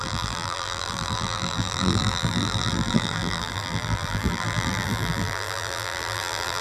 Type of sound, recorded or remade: remade